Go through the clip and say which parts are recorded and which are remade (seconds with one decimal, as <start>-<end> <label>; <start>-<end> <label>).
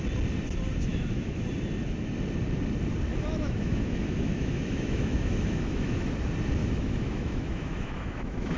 0.0-0.9 recorded; 0.9-1.4 remade; 1.4-3.1 recorded; 3.1-6.1 remade; 6.1-6.6 recorded; 6.6-8.6 remade